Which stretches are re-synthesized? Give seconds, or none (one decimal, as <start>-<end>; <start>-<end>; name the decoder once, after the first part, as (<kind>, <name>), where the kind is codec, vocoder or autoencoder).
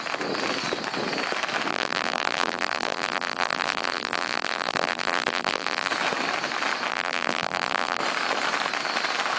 1.7-5.9 (vocoder, BigVGAN v2); 6.9-8.0